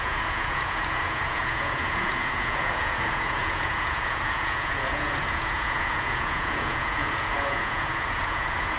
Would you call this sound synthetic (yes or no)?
yes